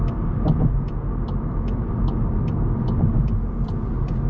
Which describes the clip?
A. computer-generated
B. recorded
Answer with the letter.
B